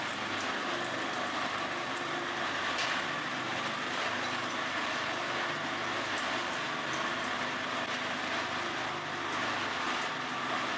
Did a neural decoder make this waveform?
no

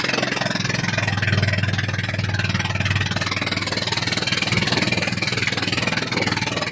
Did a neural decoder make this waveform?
no